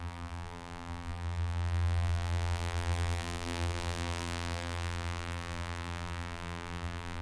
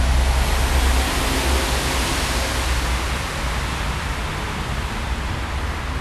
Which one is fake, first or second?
first